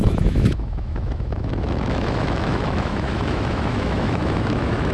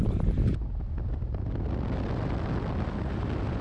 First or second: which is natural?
second